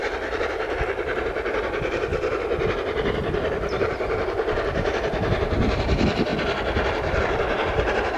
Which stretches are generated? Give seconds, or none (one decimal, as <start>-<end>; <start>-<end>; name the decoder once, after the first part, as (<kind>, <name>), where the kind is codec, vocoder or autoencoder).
0.0-2.1 (vocoder, BigVGAN v2); 2.8-6.3; 7.2-8.2